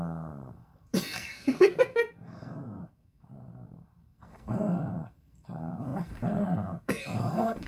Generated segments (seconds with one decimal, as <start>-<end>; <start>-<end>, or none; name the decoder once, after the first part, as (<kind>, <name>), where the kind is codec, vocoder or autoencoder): 0.0-7.7 (codec, SNAC)

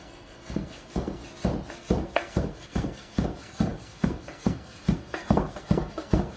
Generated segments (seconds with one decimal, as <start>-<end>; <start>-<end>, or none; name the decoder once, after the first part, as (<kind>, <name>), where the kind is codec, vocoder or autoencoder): 0.0-1.2 (codec, SNAC); 1.7-6.4

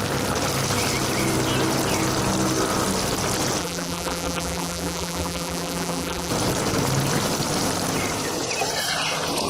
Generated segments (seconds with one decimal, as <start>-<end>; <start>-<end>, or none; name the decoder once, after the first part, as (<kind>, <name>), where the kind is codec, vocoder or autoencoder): 3.6-6.3 (vocoder, BigVGAN v2)

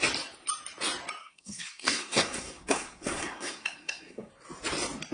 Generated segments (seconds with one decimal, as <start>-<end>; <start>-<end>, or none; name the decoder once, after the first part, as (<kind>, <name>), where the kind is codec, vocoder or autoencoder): 1.2-4.3 (codec, SNAC)

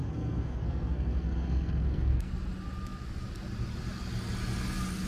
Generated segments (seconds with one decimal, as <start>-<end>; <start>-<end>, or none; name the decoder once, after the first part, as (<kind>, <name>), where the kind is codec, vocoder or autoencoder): 0.0-2.3 (codec, SNAC)

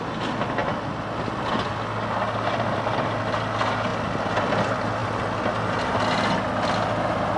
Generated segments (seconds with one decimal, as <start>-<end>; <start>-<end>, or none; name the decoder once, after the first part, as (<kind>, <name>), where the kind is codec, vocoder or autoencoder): none

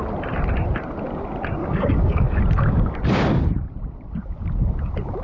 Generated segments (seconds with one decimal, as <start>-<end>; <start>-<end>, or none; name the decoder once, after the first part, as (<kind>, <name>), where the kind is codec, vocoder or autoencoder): 1.6-2.4 (codec, DAC)